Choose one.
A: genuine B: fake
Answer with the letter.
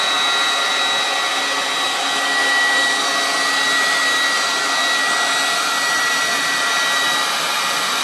A